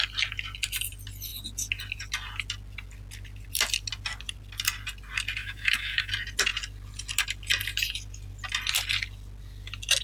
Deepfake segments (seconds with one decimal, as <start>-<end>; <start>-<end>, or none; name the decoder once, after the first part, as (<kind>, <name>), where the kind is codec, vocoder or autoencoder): 5.4-6.1 (autoencoder, DAC-VAE)